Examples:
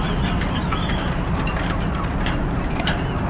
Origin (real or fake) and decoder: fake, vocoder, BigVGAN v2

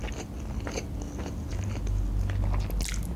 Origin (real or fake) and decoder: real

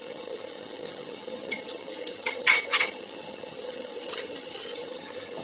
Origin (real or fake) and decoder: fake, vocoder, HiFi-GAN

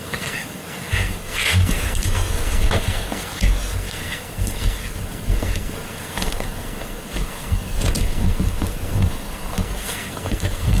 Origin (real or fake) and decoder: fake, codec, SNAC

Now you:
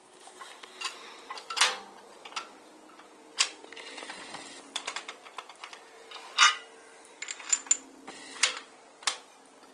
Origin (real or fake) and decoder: real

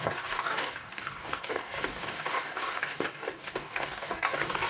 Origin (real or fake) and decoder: fake, codec, DAC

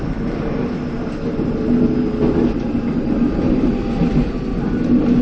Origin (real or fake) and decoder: real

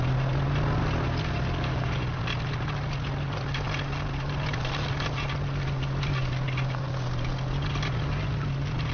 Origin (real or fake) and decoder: real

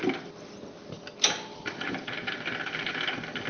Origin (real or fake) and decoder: real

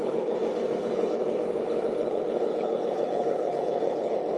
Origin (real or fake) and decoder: fake, codec, HILCodec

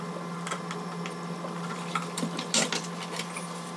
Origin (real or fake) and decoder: real